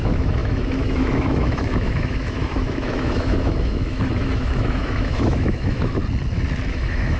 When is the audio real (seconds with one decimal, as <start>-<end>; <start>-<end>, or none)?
6.0-6.7